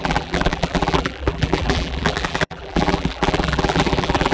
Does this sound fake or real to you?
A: fake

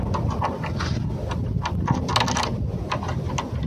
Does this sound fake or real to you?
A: real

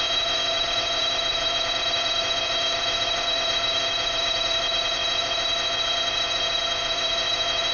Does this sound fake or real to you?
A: fake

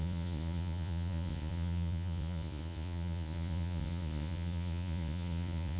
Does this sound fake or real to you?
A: fake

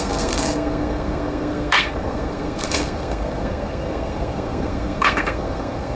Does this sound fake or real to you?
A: fake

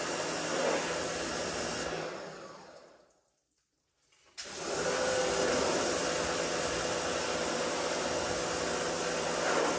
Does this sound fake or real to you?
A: real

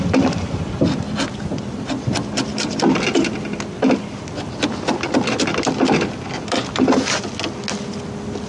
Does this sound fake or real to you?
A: real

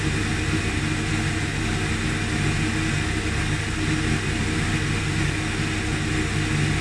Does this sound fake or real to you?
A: real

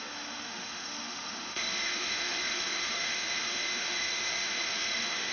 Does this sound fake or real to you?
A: fake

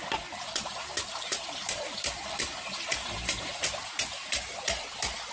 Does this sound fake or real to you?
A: real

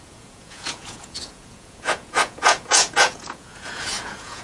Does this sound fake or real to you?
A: fake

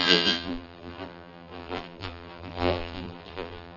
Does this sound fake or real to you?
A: fake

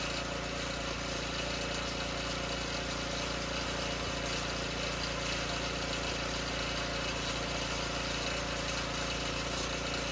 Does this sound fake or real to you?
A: real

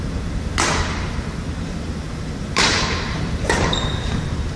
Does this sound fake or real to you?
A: fake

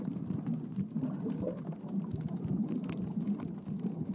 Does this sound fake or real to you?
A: real